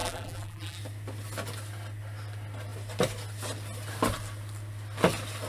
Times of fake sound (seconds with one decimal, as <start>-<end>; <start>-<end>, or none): 0.0-0.8

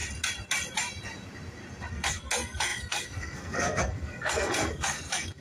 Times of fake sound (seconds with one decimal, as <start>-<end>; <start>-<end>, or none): 1.9-5.4

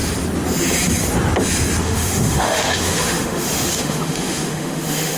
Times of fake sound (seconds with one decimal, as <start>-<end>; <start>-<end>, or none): 1.8-5.2